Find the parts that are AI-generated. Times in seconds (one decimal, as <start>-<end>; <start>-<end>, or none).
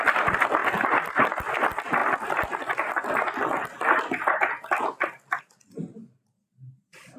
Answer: none